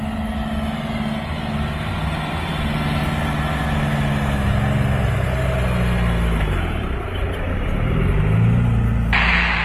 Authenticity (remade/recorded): recorded